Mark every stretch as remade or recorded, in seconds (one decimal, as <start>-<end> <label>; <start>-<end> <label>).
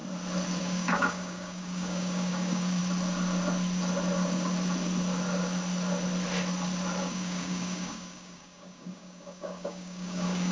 0.0-0.6 recorded; 0.6-2.8 remade; 2.8-7.0 recorded; 7.0-10.5 remade